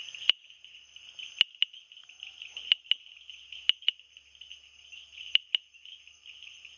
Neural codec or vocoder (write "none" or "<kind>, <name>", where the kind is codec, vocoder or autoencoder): none